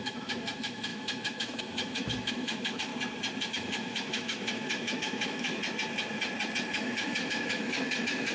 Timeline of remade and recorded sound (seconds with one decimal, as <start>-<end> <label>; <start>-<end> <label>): 0.0-2.9 remade; 2.9-3.5 recorded; 3.5-5.6 remade; 5.6-6.7 recorded; 6.7-8.3 remade